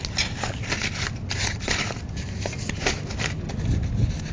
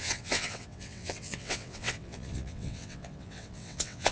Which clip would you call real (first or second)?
first